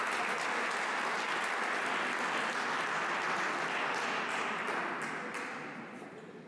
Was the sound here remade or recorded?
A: recorded